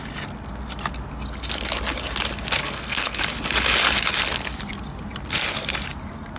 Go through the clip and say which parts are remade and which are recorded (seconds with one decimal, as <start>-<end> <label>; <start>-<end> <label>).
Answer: 0.0-2.6 recorded; 2.6-3.2 remade; 3.2-6.4 recorded